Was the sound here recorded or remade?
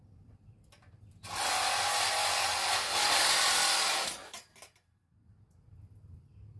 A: recorded